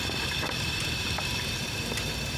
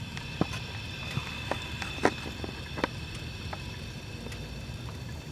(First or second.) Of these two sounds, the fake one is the first